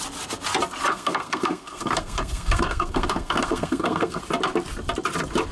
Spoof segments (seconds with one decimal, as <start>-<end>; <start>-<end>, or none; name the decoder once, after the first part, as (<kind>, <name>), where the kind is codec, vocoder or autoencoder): 0.9-4.2 (codec, SNAC)